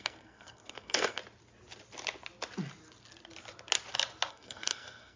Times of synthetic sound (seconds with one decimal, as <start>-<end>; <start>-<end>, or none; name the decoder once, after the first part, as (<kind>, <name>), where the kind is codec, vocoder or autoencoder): 0.0-1.2 (codec, SNAC); 4.3-5.2